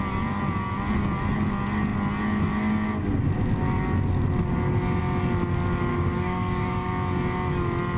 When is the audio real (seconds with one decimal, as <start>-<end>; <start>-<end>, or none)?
0.0-5.9; 6.9-8.0